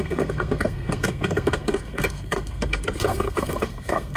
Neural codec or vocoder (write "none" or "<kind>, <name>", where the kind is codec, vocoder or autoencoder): codec, SNAC